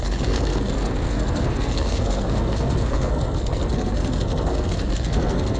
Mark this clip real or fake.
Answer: fake